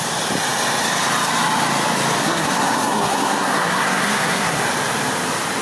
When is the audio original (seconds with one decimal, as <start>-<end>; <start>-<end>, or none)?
0.0-2.2; 4.6-5.6